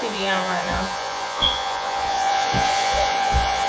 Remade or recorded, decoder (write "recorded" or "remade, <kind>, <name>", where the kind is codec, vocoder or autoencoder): remade, vocoder, Vocos